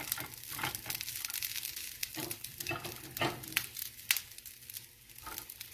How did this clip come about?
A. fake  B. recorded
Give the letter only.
B